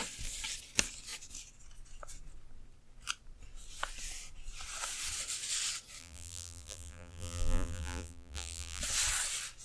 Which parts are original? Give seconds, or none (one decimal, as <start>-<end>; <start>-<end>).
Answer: 0.0-6.0; 8.8-9.6